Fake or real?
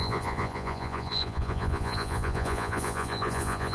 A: fake